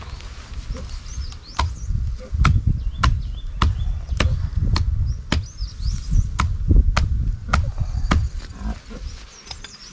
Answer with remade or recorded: recorded